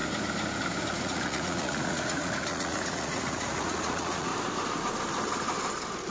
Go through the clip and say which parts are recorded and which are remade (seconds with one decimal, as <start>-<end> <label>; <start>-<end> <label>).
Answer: 0.0-0.9 recorded; 0.9-4.3 remade; 4.3-6.1 recorded